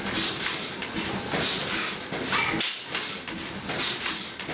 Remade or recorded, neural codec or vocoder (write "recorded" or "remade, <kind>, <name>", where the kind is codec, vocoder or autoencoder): recorded